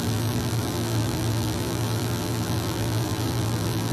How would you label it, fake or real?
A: fake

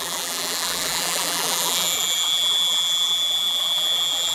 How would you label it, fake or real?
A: fake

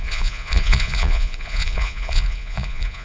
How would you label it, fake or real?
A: fake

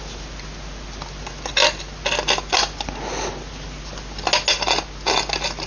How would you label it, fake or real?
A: real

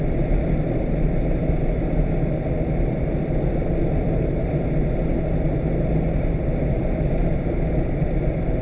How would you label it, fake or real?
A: real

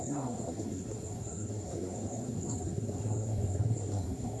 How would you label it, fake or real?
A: fake